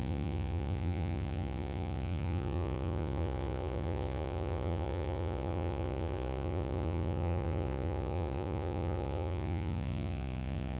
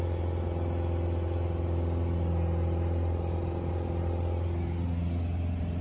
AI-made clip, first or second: first